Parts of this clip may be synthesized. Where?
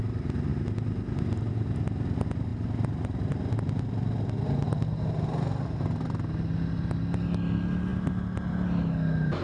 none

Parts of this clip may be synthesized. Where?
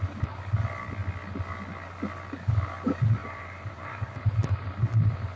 3.2-4.3 (vocoder, BigVGAN v2)